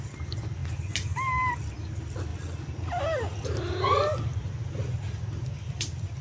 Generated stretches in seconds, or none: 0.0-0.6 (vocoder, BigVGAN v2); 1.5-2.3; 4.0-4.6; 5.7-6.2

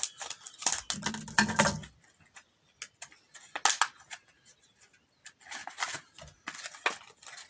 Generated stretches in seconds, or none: 5.6-6.1 (vocoder, BigVGAN v2)

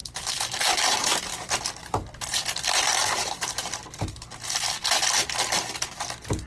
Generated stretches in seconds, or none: 0.0-0.6 (vocoder, BigVGAN v2); 3.0-4.3